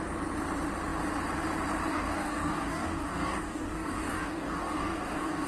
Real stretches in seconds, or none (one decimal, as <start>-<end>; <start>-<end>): 0.0-1.9